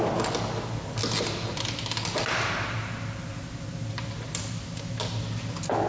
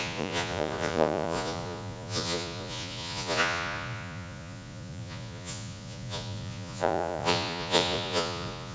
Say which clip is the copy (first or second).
second